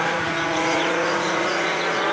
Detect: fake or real fake